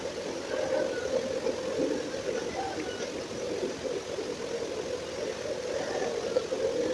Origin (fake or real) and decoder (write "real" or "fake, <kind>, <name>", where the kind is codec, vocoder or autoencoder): real